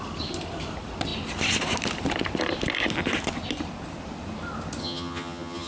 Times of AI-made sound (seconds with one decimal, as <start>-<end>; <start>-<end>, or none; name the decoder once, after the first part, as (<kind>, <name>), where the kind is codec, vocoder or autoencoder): 4.8-5.7 (vocoder, HiFi-GAN)